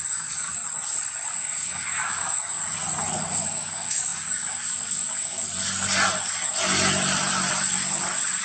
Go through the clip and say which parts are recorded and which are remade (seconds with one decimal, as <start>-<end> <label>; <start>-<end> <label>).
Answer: 0.0-0.6 remade; 0.6-1.3 recorded; 1.3-2.6 remade; 2.6-3.2 recorded; 3.2-5.5 remade; 5.5-8.4 recorded